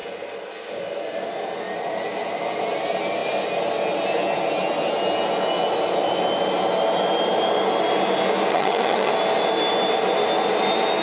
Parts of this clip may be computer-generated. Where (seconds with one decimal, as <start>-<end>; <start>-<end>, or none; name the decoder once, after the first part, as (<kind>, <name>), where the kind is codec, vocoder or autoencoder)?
8.5-9.1 (vocoder, HiFi-GAN)